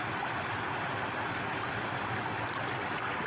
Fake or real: real